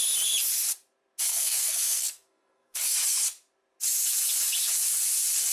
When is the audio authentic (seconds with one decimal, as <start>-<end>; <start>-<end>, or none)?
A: 0.0-1.3; 2.9-5.5